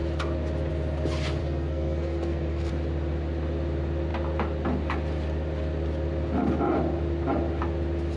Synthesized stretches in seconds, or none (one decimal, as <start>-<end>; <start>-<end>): 1.4-2.7